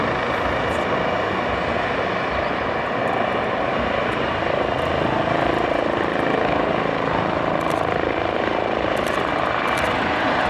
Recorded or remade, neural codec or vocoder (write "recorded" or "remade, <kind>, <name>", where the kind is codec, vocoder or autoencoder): recorded